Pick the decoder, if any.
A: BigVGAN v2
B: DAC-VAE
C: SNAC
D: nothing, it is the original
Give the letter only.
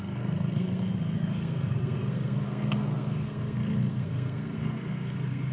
C